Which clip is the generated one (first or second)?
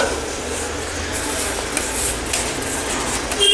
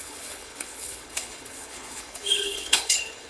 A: second